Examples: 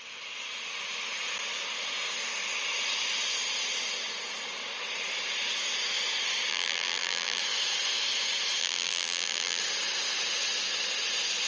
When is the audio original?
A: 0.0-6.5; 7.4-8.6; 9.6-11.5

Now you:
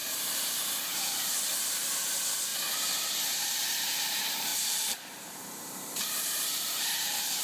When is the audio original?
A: 2.5-3.2

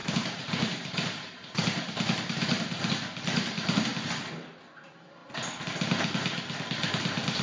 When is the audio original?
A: 3.9-4.8; 5.2-7.4

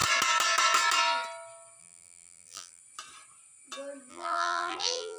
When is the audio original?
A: 0.0-1.8; 2.8-4.1

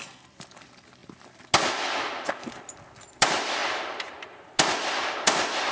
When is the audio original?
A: 1.0-2.8; 3.6-4.7

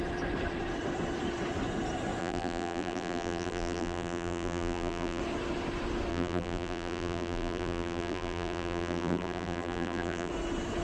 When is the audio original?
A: 0.0-2.2; 5.2-6.1; 10.3-10.8

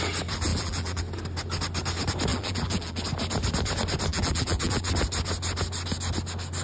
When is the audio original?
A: 0.0-0.5; 1.0-2.3; 3.0-4.1; 4.9-6.6

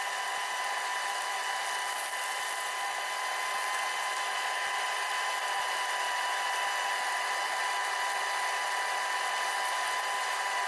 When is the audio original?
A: 0.0-10.7